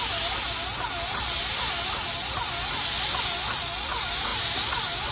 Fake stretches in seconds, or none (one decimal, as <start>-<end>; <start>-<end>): none